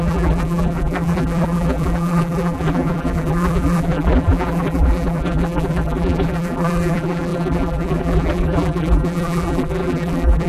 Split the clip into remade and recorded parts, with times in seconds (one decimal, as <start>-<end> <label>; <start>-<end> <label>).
0.0-10.5 remade